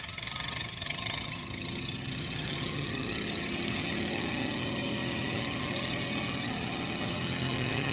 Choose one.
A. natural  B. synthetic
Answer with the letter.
B